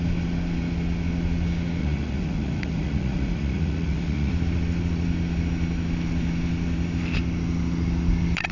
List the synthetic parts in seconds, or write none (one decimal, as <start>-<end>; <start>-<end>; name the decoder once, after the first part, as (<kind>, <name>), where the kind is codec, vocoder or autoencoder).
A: 1.8-4.3 (vocoder, Vocos)